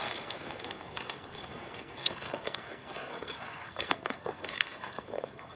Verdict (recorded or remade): remade